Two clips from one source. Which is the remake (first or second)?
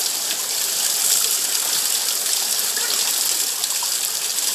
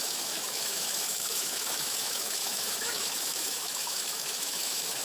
second